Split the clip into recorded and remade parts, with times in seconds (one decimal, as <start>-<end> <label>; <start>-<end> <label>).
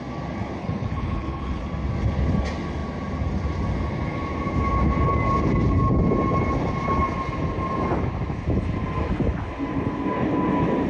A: 0.0-0.6 recorded; 0.6-1.6 remade; 1.6-10.9 recorded